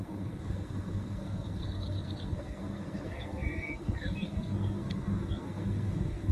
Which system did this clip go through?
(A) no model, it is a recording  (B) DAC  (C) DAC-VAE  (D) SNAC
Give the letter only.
D